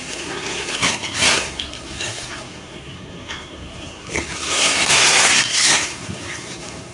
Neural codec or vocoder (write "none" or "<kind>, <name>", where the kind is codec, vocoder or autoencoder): codec, SNAC